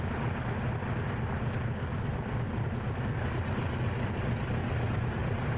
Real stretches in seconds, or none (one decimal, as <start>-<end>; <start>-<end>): 0.0-5.6